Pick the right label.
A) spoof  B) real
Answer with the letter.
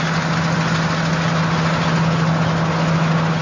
B